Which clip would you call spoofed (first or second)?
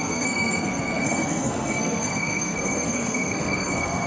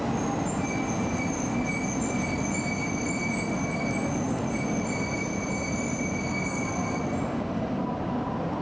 first